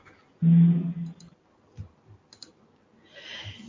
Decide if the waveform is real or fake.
real